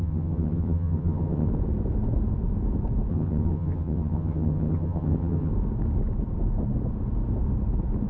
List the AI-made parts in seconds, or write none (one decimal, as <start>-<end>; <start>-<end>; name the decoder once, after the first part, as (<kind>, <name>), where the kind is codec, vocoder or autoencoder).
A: 0.0-1.5 (vocoder, HiFi-GAN); 3.1-5.5